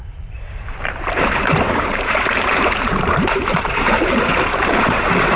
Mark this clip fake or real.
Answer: fake